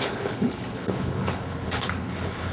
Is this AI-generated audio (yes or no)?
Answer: yes